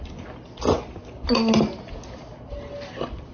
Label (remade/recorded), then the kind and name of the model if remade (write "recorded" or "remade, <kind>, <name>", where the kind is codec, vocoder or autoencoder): recorded